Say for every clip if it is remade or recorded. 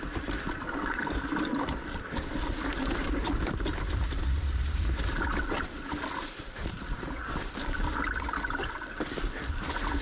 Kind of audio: remade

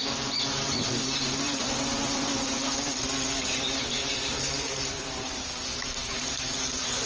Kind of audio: remade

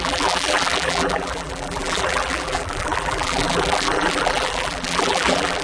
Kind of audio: remade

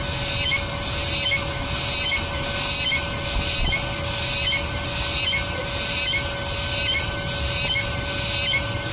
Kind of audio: recorded